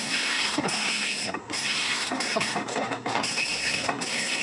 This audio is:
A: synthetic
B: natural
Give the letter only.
A